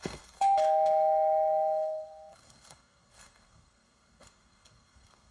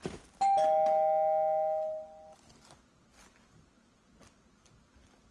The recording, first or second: second